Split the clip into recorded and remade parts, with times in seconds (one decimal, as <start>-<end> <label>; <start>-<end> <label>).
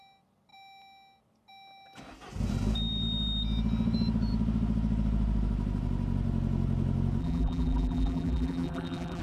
0.0-7.2 recorded; 7.2-9.2 remade